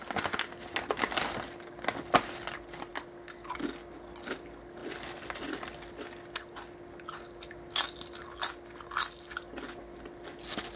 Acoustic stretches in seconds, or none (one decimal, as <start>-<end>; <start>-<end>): 0.0-10.8